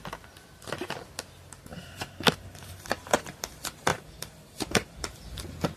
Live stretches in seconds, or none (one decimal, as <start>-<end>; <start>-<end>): 0.0-1.7; 3.4-3.9; 5.0-5.8